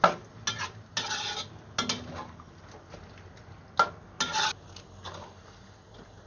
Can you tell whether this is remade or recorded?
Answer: recorded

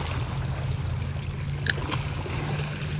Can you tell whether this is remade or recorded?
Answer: recorded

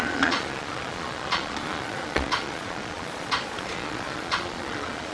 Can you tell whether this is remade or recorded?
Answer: remade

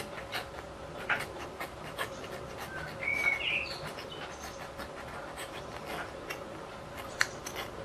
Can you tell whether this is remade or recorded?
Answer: recorded